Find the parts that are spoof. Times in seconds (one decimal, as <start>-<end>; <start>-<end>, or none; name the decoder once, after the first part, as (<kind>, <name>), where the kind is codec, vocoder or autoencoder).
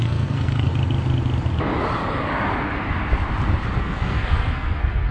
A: 0.0-0.7 (codec, SNAC); 3.8-5.1